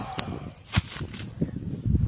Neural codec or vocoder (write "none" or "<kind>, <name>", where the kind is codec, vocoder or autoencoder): none